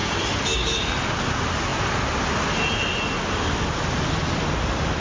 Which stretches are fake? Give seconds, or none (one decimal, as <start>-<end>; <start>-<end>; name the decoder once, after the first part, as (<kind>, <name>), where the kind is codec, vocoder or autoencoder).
none